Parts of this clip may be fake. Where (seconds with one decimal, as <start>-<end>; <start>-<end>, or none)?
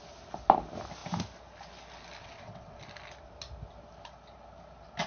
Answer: 2.2-2.8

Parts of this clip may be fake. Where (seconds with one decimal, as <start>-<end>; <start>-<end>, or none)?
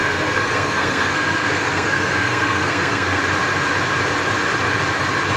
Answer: 0.0-3.2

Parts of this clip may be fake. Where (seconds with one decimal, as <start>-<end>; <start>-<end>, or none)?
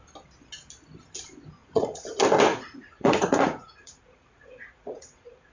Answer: 1.6-2.1; 2.5-5.5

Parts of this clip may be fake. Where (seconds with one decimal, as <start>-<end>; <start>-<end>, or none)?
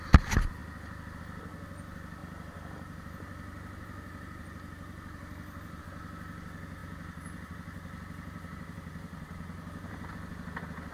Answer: 2.2-5.8; 6.8-10.1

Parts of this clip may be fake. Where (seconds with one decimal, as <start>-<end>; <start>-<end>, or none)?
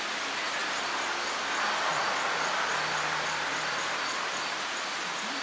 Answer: none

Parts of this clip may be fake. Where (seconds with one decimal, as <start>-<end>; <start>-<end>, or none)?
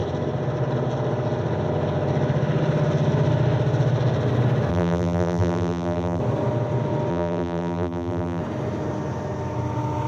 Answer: 4.7-6.2; 7.1-8.4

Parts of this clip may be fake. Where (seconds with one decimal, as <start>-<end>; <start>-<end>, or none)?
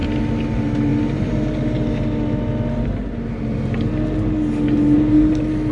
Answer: none